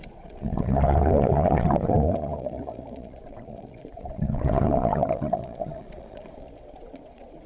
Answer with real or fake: fake